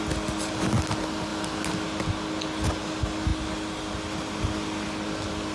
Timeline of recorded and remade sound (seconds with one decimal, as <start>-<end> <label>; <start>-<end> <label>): 0.0-5.5 recorded